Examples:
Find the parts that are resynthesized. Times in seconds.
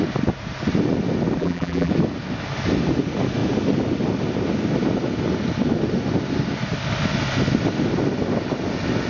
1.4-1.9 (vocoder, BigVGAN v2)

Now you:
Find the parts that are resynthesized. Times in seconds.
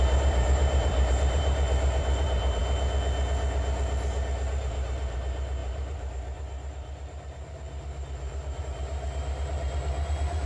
0.0-2.6 (vocoder, BigVGAN v2); 4.5-10.5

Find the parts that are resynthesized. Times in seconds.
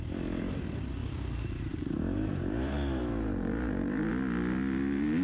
1.0-4.1 (vocoder, BigVGAN v2)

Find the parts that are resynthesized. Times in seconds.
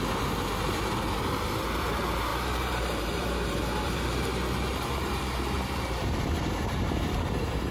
2.3-6.9 (vocoder, BigVGAN v2)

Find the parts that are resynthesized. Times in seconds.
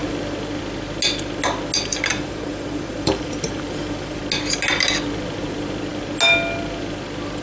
2.1-4.2 (vocoder, BigVGAN v2)